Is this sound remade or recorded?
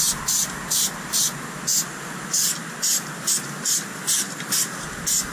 recorded